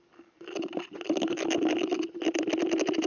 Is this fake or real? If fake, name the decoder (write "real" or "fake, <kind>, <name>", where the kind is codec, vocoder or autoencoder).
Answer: real